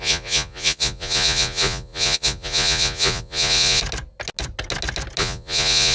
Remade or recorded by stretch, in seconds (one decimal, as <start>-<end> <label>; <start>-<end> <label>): 0.0-3.8 remade; 3.8-5.2 recorded; 5.2-5.9 remade